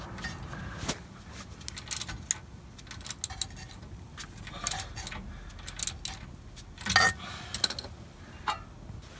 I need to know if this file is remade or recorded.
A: recorded